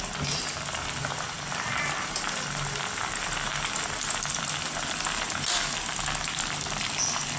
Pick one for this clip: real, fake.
real